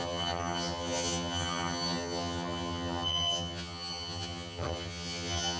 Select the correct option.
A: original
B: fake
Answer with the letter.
B